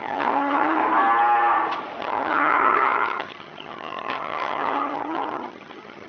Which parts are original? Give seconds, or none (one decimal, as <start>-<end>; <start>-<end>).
0.8-2.0